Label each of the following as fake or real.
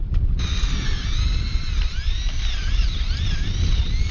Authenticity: real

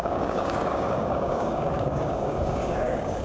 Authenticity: fake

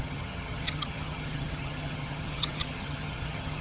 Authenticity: fake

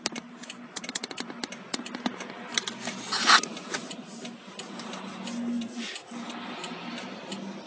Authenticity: real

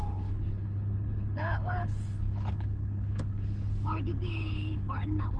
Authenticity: fake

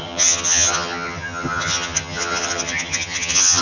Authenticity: fake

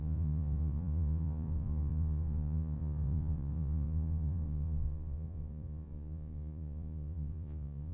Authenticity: fake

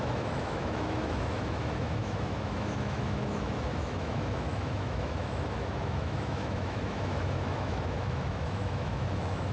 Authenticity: fake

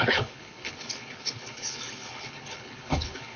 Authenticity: fake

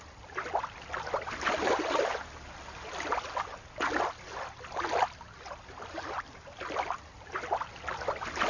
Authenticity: real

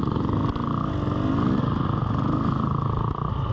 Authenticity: real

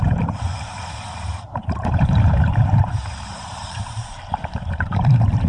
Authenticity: fake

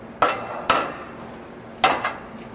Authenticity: real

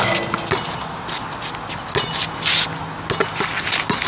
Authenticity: real